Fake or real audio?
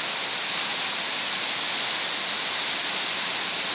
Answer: real